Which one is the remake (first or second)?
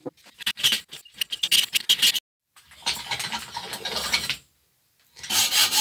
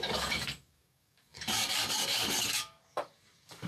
second